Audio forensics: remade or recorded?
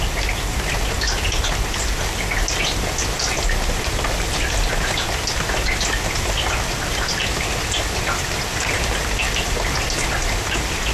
recorded